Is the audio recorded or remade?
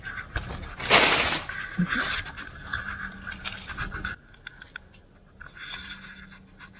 recorded